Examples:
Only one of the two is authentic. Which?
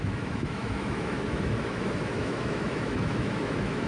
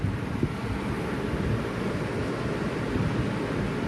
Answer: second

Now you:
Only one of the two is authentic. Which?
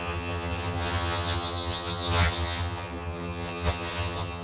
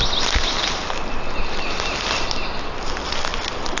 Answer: second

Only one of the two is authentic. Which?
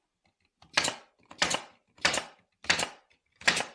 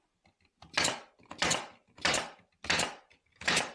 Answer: second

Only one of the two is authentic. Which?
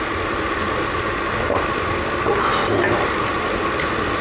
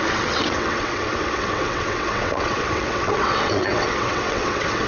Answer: first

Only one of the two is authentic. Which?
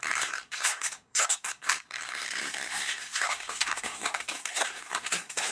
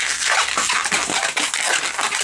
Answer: second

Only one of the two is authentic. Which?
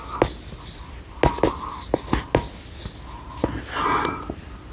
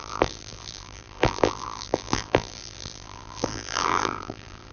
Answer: first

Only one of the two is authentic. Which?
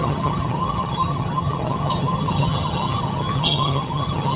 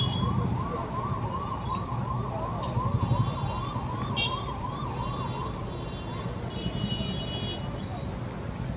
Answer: second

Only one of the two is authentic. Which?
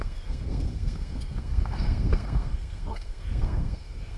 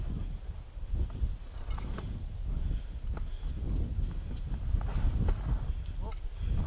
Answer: second